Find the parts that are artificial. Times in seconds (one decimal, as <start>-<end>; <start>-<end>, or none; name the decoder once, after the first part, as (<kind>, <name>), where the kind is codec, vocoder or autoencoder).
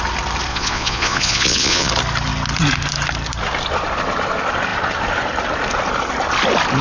0.5-1.9 (vocoder, Vocos)